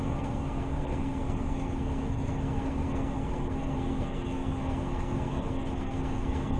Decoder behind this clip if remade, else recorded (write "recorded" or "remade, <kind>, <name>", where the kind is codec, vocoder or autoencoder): remade, codec, SNAC